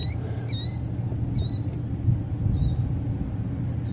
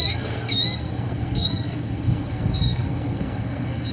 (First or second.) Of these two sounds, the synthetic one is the second